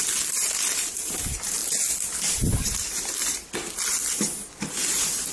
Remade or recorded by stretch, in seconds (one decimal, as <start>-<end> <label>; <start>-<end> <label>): 0.0-5.3 recorded